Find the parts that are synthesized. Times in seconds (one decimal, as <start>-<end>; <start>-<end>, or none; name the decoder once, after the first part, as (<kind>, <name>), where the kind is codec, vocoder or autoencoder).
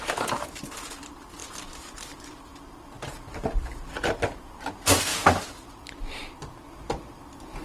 0.0-2.5 (vocoder, BigVGAN v2); 3.9-5.1; 6.7-7.6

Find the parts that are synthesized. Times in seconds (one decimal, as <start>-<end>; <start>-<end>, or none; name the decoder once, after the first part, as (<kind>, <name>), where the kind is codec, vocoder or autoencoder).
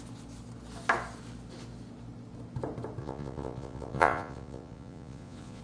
3.0-5.6 (vocoder, Vocos)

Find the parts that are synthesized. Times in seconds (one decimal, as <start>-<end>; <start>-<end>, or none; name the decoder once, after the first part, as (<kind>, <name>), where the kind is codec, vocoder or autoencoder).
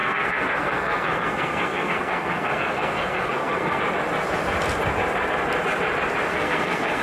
0.0-3.8 (codec, SNAC); 6.3-7.0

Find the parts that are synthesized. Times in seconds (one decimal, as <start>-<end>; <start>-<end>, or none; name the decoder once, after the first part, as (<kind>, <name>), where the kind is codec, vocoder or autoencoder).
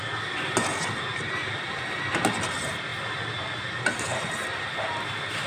none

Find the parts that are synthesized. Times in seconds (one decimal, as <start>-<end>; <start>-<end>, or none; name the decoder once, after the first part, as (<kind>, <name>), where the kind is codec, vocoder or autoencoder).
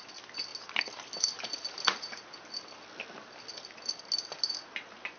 none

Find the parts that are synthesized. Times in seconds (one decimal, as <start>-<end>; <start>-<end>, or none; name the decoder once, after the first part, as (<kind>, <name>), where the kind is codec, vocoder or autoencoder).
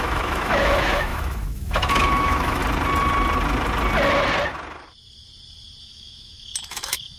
0.0-2.6 (autoencoder, DAC-VAE); 5.8-7.2